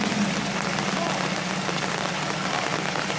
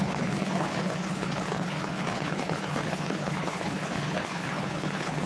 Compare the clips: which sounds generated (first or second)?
second